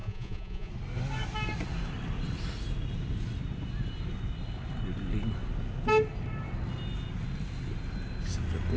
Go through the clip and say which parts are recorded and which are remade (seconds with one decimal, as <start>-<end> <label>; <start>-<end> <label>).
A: 0.0-0.7 remade; 0.7-8.8 recorded